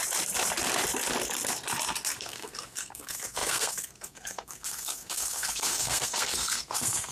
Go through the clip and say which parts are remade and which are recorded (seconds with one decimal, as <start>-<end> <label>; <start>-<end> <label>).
0.0-2.2 recorded; 2.2-7.1 remade